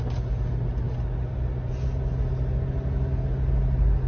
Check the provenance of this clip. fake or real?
real